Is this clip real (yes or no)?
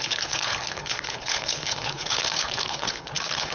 no